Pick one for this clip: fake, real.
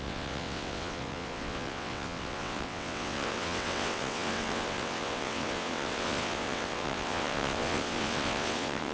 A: fake